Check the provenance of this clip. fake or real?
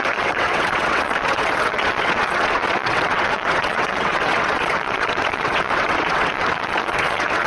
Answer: fake